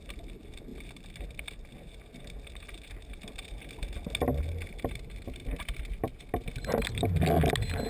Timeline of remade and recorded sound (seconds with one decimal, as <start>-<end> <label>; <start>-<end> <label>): 0.0-7.9 recorded